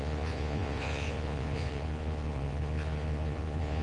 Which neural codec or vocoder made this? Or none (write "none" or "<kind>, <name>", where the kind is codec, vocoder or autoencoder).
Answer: vocoder, Vocos